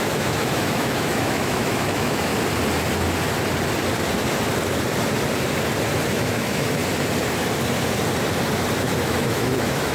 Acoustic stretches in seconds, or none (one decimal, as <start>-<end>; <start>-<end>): 2.3-6.1; 6.8-9.0